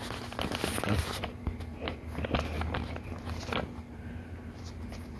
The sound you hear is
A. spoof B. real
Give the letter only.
B